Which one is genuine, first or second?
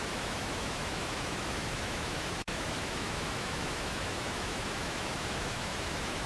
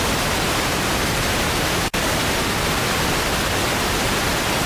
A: second